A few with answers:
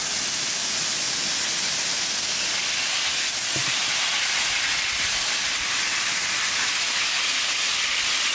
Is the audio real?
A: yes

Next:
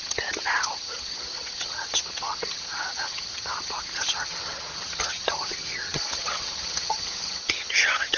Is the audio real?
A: no